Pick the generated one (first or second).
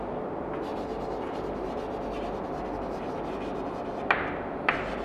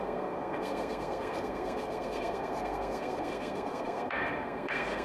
second